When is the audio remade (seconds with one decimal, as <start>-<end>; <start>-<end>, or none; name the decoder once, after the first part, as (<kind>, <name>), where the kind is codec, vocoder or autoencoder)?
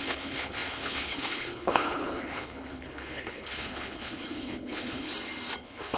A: 0.0-5.1 (codec, HILCodec); 5.6-6.0